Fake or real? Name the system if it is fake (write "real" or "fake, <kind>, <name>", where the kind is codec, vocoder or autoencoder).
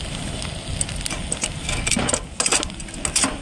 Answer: real